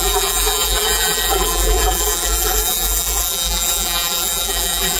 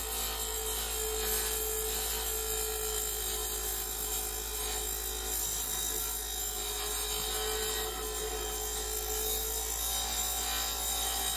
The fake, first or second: first